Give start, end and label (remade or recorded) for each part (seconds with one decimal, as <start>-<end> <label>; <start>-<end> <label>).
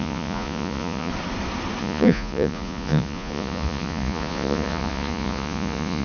0.0-1.1 remade; 1.1-1.8 recorded; 1.8-6.0 remade